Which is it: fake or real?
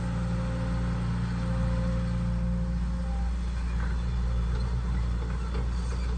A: real